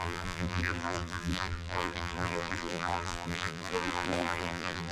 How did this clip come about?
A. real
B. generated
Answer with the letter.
B